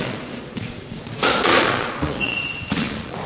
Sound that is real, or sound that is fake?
fake